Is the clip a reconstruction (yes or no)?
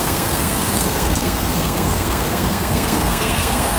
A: yes